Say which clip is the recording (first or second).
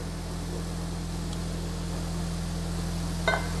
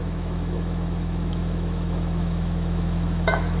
first